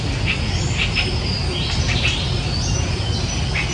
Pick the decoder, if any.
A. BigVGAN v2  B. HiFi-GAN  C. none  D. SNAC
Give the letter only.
C